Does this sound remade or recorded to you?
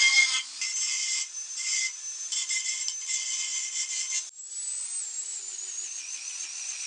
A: recorded